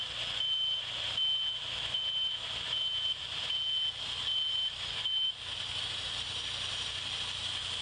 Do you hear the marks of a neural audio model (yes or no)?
no